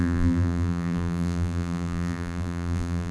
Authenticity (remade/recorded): remade